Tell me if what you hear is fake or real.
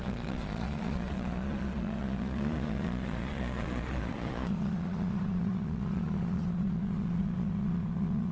fake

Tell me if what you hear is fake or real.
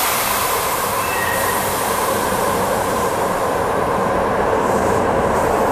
fake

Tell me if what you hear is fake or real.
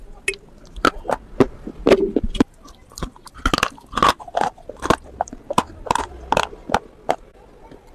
real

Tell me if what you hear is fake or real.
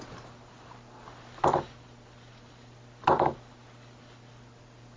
real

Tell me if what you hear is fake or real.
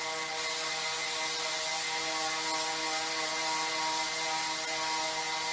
real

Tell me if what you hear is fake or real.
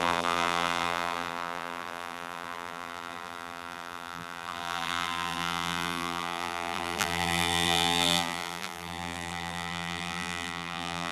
fake